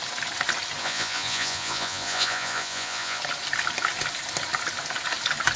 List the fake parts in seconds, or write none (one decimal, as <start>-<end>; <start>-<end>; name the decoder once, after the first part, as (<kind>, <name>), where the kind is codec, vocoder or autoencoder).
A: 0.8-3.2 (vocoder, Vocos)